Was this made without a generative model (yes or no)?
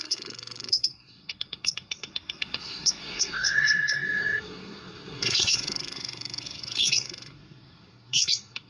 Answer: no